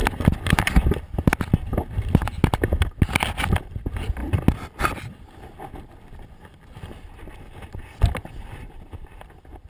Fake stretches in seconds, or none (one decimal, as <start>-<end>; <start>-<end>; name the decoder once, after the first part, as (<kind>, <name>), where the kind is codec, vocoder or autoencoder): 0.0-1.5 (vocoder, BigVGAN v2)